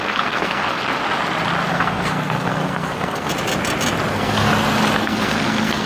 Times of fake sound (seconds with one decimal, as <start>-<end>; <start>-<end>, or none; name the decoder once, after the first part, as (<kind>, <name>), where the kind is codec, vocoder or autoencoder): 0.0-0.8 (codec, SNAC); 1.7-3.3; 4.1-4.5; 5.0-5.9